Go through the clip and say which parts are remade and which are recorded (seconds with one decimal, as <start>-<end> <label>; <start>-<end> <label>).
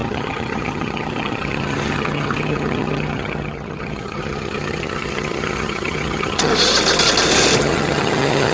0.0-6.5 remade; 6.5-7.6 recorded; 7.6-8.5 remade